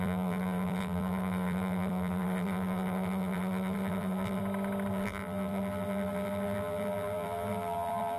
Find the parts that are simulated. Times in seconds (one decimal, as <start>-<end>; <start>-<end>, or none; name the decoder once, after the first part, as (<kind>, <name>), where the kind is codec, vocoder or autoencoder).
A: 0.0-4.4 (vocoder, BigVGAN v2); 4.9-8.2